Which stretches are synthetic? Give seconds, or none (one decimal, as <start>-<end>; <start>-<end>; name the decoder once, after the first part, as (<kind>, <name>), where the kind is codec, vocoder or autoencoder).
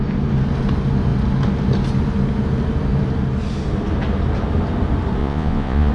5.2-5.9 (vocoder, Vocos)